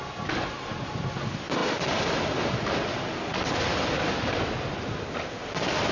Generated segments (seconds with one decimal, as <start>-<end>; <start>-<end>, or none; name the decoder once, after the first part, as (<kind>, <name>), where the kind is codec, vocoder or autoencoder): none